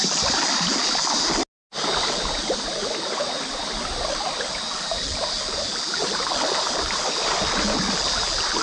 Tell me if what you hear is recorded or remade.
recorded